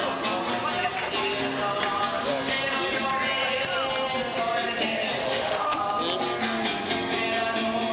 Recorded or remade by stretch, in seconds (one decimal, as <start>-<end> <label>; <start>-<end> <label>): 0.0-5.2 recorded; 5.2-5.8 remade; 5.8-7.9 recorded